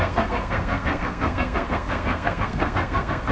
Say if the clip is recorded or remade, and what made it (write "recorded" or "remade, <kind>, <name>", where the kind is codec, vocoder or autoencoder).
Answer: remade, codec, SNAC